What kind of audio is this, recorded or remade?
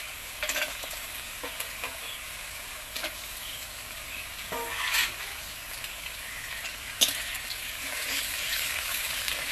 remade